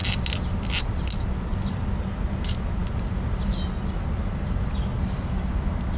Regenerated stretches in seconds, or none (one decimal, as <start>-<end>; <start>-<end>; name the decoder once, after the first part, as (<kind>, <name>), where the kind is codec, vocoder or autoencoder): none